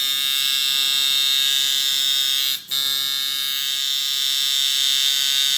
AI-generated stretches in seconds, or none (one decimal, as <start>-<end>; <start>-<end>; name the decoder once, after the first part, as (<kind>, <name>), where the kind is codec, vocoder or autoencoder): none